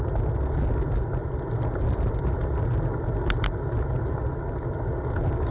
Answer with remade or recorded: recorded